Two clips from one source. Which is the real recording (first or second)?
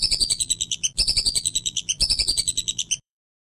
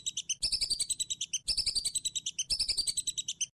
second